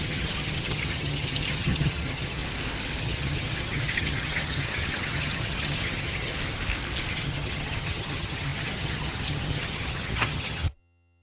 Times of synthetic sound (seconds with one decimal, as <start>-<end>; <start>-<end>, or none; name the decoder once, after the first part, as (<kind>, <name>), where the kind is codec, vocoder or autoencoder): 0.0-2.4 (vocoder, HiFi-GAN); 3.0-6.3; 7.1-11.2